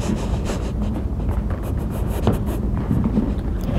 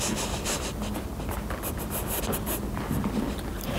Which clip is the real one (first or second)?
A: second